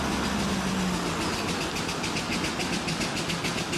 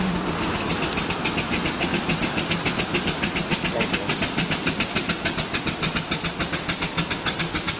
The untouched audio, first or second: first